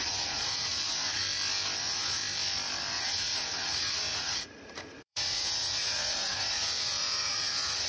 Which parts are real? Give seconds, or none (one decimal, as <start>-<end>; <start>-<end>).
1.2-1.8; 2.2-2.9